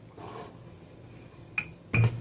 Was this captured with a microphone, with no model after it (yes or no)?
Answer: yes